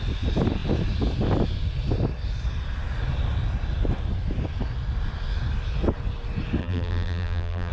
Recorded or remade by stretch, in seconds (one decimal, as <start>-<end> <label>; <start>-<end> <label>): 0.0-6.6 recorded; 6.6-7.7 remade